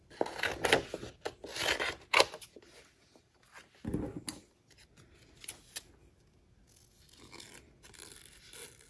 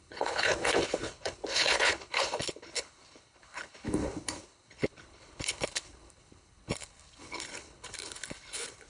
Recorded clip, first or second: first